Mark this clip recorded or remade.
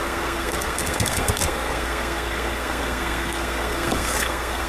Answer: remade